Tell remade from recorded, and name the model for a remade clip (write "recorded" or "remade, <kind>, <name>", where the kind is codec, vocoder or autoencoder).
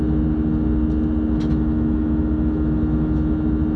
recorded